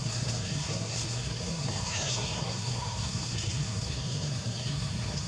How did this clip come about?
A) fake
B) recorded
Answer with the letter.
A